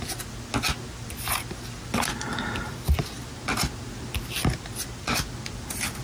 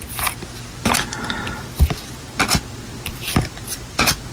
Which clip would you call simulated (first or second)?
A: second